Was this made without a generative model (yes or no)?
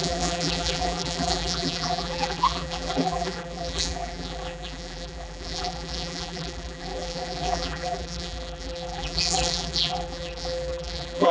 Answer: no